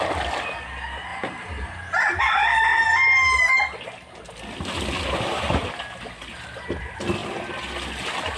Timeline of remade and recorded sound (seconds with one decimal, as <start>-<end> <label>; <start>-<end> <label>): 0.0-8.4 recorded